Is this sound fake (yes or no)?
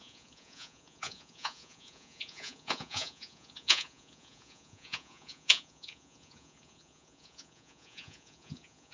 yes